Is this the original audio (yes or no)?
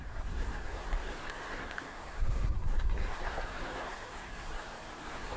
no